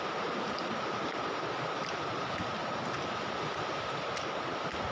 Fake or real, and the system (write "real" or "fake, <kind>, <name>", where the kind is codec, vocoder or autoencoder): real